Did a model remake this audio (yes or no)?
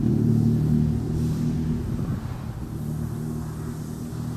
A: no